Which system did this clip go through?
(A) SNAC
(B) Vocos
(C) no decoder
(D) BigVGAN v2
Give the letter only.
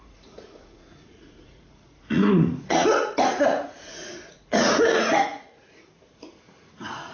B